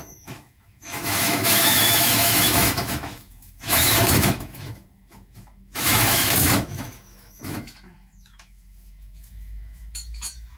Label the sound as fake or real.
fake